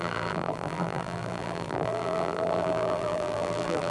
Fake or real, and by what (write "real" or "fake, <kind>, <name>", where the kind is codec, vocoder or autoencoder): fake, vocoder, BigVGAN v2